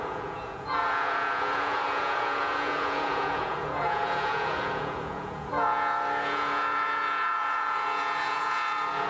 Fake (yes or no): yes